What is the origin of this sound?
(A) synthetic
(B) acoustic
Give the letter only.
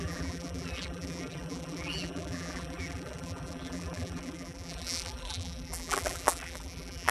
A